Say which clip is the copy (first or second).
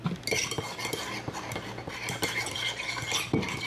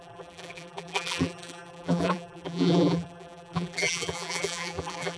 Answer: second